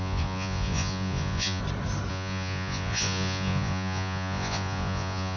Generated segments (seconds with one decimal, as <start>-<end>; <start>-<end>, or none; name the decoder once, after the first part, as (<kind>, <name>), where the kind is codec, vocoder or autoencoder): 0.0-1.6 (vocoder, Vocos); 2.1-5.4